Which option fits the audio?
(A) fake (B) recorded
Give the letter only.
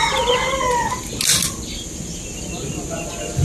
B